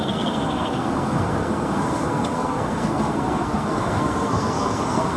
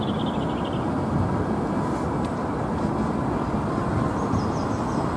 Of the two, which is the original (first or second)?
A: second